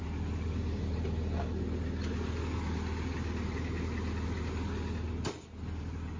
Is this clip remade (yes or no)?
no